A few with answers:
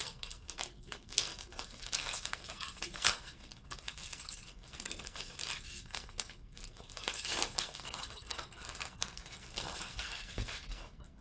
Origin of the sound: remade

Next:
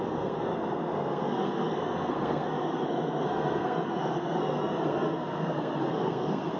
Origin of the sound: remade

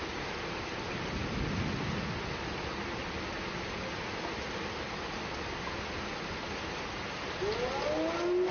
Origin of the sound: recorded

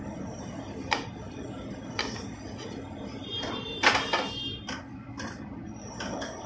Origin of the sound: recorded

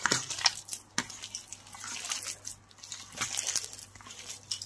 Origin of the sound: recorded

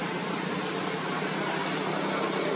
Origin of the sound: recorded